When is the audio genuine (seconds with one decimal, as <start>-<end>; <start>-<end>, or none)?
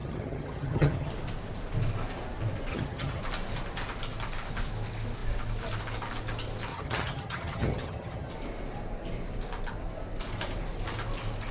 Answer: 1.1-2.7; 3.2-6.7; 8.3-11.5